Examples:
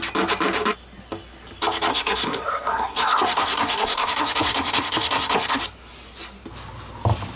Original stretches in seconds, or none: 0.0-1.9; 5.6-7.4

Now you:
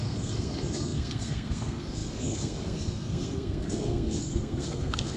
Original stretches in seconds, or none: none

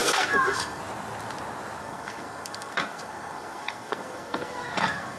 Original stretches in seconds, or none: 0.8-1.8

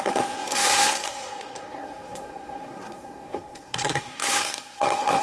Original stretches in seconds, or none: none

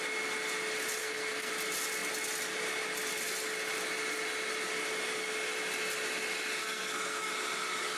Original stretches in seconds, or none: 0.0-1.0; 1.5-6.6; 7.3-8.0

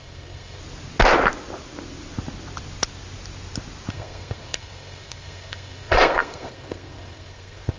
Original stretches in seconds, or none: 0.6-3.9